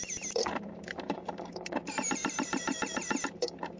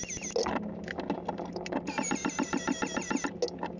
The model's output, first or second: first